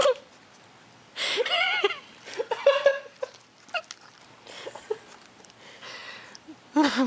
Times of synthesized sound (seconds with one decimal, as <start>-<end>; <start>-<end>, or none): 0.0-2.9; 4.2-7.1